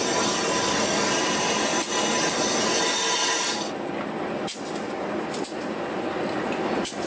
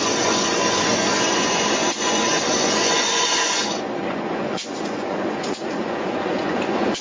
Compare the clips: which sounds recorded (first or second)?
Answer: first